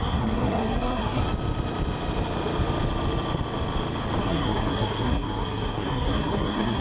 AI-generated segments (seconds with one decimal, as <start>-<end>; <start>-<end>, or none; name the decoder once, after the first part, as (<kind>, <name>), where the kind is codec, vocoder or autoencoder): 0.0-1.2 (codec, SNAC); 4.2-6.8

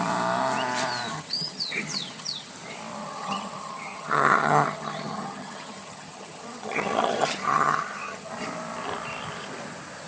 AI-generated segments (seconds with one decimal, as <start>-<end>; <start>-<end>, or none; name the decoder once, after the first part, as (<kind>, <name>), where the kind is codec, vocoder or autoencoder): 1.1-2.5 (vocoder, HiFi-GAN); 3.0-8.3

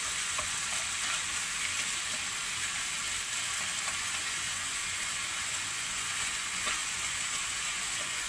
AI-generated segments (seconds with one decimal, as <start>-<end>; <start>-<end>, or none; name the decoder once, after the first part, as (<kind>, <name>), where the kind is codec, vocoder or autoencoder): 0.0-0.7 (vocoder, Vocos); 3.9-8.3